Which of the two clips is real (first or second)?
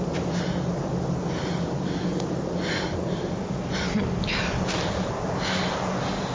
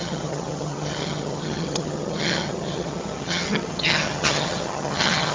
first